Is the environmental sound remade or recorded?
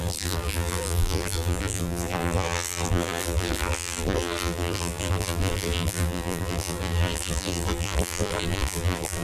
remade